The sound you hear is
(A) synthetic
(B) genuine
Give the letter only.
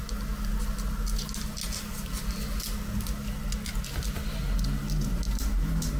B